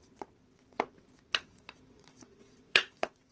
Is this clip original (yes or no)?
no